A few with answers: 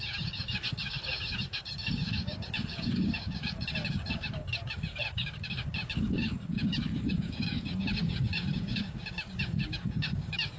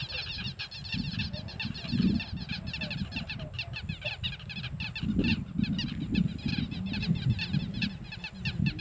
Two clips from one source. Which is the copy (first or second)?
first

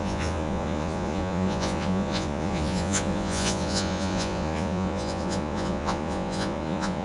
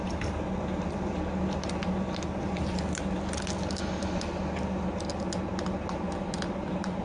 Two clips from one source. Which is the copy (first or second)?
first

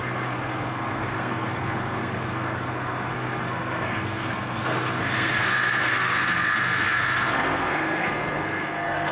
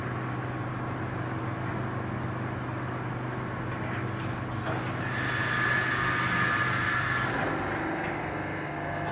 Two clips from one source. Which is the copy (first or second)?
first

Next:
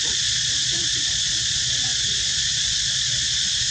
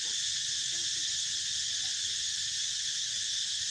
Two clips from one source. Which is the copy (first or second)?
first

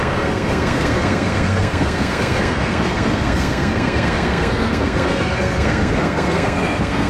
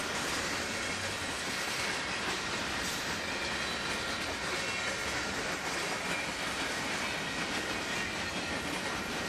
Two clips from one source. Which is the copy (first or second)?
first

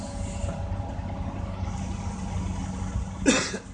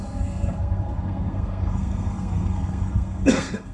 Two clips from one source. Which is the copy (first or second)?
second